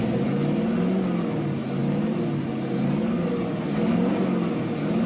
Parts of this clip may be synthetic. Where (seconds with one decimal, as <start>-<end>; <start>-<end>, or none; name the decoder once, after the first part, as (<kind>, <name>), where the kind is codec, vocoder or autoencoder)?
none